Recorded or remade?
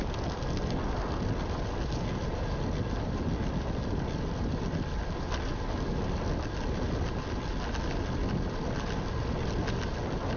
recorded